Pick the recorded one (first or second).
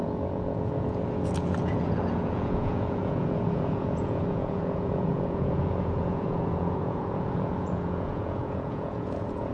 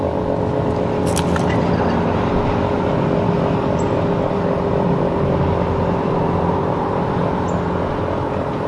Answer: second